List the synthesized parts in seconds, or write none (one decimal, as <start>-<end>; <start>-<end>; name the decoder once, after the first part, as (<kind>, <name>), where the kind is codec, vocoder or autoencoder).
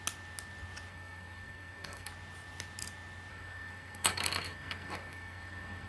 0.9-2.1 (codec, SNAC); 3.3-5.9